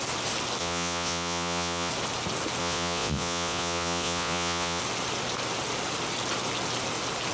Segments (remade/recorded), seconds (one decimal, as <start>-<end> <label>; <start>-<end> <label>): 0.0-0.6 recorded; 0.6-1.9 remade; 1.9-2.6 recorded; 2.6-4.8 remade; 4.8-7.3 recorded